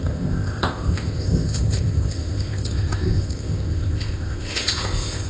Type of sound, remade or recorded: remade